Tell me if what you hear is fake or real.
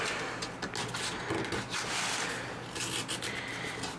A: real